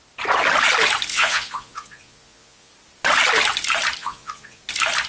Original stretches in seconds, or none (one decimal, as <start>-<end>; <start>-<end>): 0.0-1.1; 2.7-4.0; 4.6-5.1